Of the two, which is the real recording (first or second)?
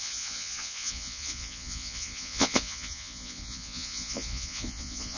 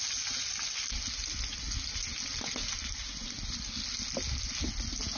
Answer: second